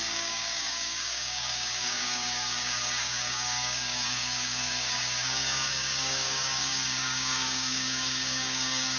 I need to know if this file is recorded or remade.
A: remade